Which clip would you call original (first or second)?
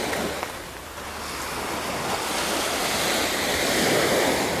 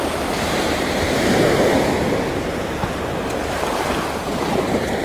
first